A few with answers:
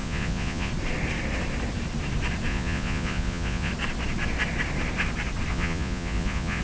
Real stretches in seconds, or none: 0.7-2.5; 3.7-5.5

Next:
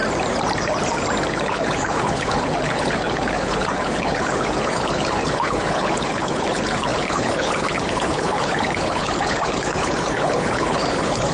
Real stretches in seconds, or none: 0.0-1.3

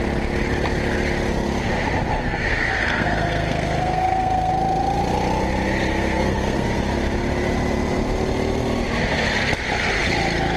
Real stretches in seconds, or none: 0.0-2.2; 4.5-5.9; 6.8-10.6

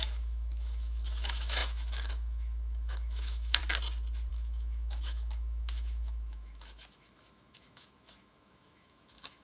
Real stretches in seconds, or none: 3.6-4.3

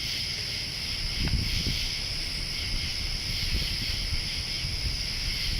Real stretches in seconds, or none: 0.0-5.6

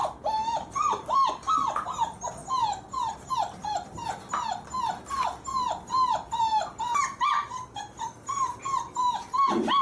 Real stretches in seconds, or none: 1.5-9.8

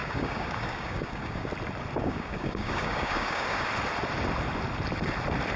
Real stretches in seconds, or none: 1.5-2.0; 3.7-5.6